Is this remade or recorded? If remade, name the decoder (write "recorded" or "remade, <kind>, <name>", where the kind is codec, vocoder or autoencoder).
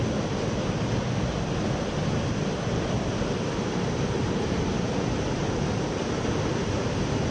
recorded